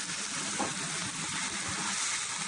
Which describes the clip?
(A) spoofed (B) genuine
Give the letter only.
B